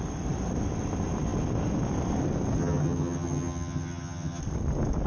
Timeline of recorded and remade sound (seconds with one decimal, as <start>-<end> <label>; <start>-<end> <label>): 0.0-2.6 recorded; 2.6-4.4 remade; 4.4-5.1 recorded